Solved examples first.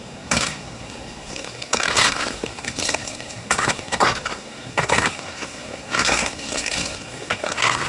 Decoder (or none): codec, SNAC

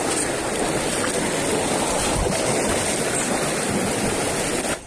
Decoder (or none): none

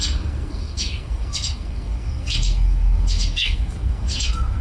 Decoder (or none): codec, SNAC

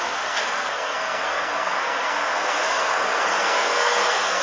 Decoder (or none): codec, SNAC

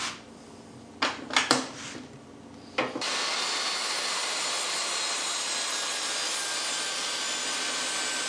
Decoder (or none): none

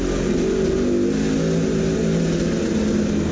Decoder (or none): none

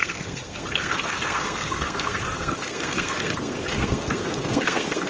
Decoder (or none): codec, SNAC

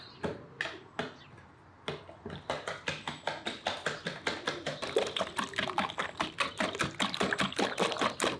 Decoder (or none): none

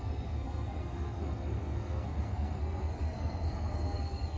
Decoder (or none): codec, SNAC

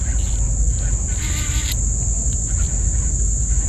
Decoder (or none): none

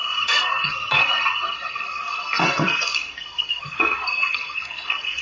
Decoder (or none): codec, SNAC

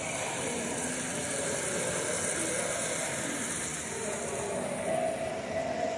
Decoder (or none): none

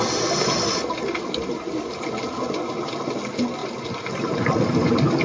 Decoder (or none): none